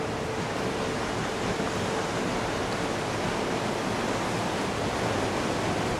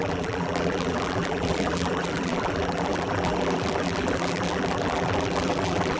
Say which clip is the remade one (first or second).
second